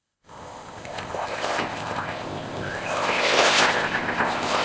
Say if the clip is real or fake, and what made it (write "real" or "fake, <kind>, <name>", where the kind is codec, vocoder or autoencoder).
fake, codec, ZipCodec